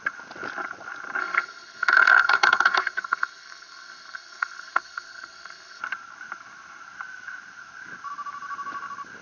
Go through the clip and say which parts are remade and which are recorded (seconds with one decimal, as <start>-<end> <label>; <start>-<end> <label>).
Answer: 0.0-1.2 recorded; 1.2-5.8 remade; 5.8-9.2 recorded